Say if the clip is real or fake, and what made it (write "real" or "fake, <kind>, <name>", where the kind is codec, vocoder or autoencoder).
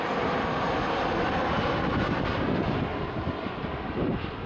real